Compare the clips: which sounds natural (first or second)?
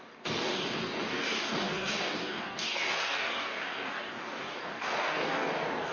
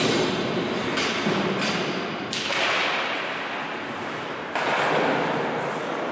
second